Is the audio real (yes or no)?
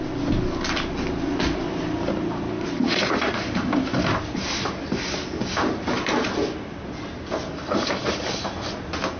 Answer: yes